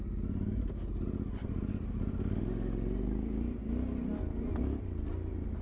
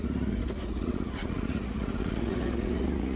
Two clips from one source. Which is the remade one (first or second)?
second